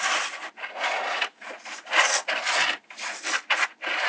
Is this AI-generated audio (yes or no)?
no